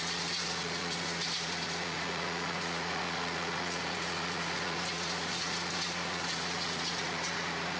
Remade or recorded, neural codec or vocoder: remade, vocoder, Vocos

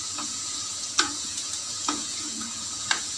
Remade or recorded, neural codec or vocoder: remade, vocoder, Vocos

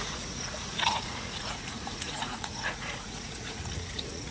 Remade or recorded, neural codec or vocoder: remade, vocoder, Vocos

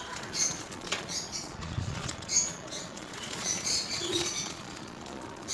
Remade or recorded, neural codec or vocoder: remade, vocoder, Vocos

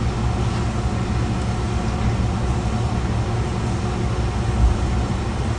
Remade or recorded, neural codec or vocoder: recorded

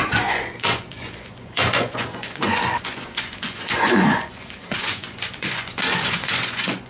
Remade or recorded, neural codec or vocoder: remade, vocoder, Vocos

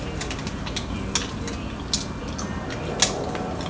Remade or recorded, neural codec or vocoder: recorded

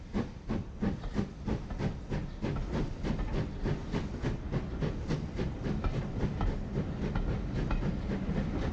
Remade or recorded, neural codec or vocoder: recorded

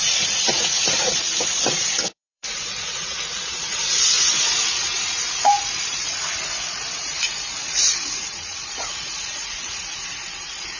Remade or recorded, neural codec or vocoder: remade, vocoder, Vocos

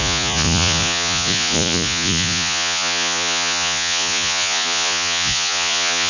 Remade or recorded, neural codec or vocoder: remade, vocoder, Vocos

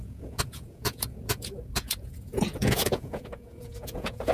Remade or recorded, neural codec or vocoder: remade, vocoder, Vocos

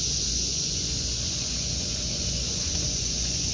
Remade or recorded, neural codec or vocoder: remade, vocoder, Vocos